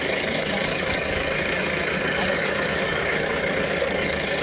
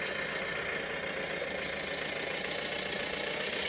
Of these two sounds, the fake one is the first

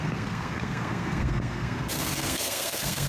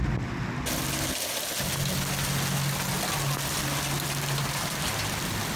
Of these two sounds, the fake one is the first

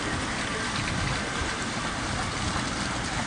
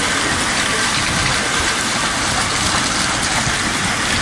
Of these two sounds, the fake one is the first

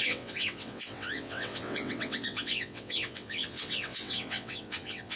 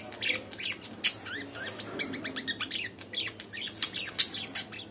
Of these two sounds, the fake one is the first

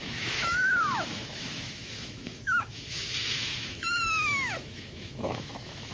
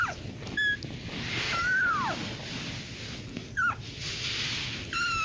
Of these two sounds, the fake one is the first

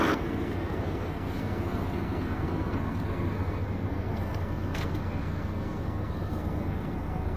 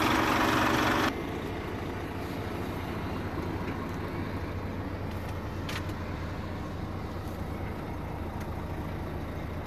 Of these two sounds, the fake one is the first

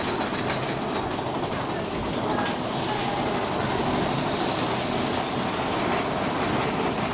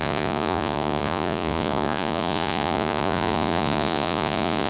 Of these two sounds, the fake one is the second